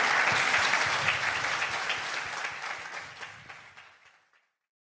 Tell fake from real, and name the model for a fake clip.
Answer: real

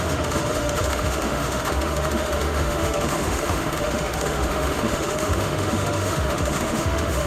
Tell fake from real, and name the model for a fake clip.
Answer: fake, autoencoder, DAC-VAE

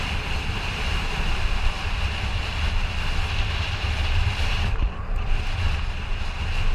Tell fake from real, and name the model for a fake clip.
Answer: real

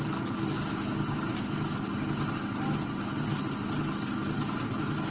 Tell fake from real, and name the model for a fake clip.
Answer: real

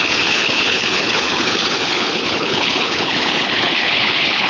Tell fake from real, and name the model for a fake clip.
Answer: fake, codec, HILCodec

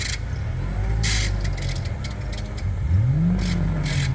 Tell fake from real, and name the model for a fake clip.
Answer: real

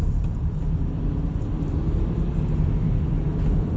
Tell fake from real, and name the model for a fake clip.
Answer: real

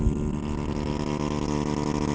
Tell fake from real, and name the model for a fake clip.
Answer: real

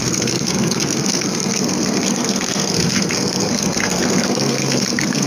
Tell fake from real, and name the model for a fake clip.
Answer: fake, codec, SNAC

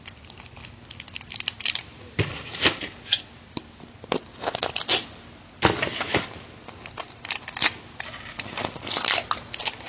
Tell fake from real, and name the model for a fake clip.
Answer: real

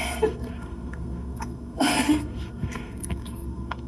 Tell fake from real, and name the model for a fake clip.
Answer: fake, codec, SNAC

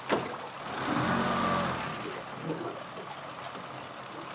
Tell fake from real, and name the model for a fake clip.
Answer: real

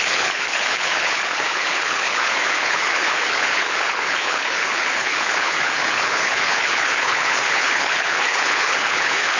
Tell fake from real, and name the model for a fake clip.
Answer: fake, codec, HILCodec